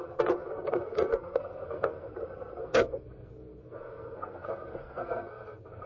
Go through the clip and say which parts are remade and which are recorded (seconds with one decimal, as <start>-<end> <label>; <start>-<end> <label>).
0.0-2.1 remade; 2.1-2.6 recorded; 2.6-5.9 remade